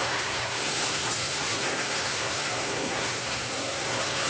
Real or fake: fake